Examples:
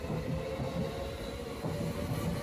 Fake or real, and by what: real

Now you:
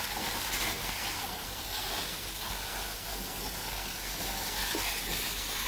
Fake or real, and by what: fake, codec, SNAC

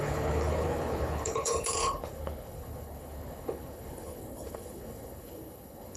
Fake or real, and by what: fake, codec, HILCodec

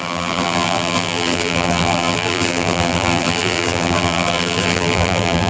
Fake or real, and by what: fake, vocoder, BigVGAN v2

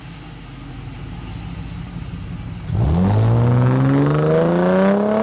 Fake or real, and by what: real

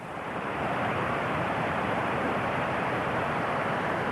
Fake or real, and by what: fake, vocoder, BigVGAN v2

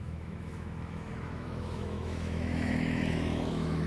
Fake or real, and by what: fake, autoencoder, DAC-VAE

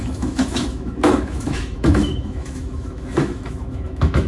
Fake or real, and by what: fake, autoencoder, DAC-VAE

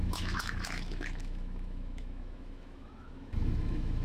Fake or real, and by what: fake, autoencoder, DAC-VAE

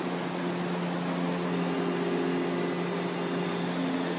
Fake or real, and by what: real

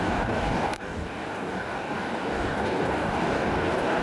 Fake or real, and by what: fake, codec, DAC